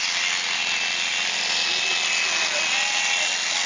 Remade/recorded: recorded